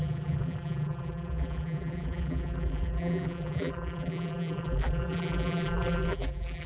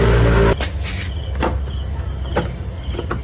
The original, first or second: second